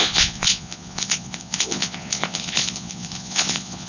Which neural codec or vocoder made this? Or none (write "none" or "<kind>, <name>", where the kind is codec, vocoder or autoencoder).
vocoder, Vocos